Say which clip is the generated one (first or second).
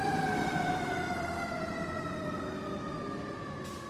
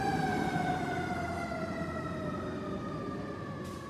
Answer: second